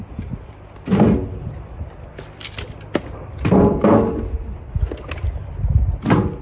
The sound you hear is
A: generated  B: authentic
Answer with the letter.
B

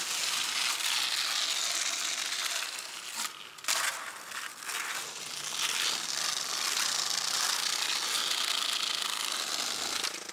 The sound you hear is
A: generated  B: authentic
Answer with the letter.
B